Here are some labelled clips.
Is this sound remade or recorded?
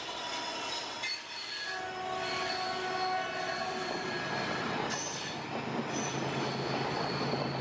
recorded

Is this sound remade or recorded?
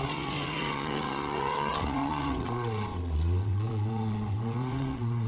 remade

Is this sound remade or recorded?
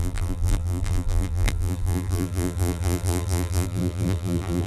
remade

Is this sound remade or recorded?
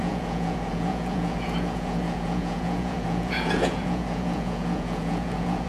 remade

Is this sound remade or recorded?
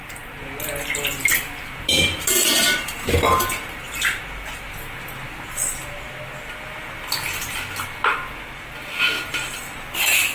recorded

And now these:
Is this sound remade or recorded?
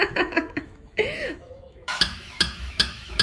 remade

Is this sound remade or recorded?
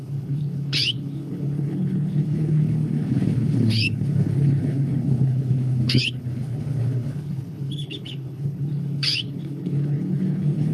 remade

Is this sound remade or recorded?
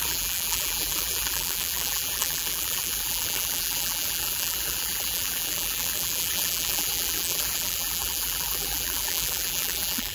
remade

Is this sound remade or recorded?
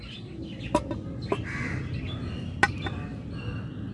recorded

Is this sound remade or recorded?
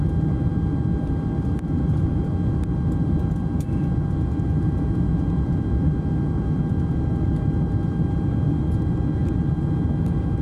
recorded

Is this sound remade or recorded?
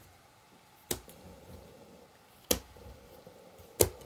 recorded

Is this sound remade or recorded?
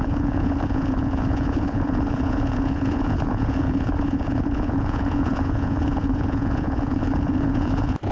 remade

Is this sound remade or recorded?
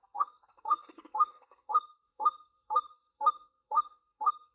remade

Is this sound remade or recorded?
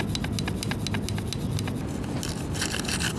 recorded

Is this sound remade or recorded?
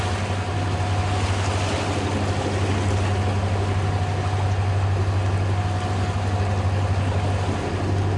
recorded